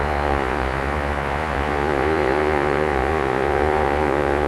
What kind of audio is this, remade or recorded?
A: remade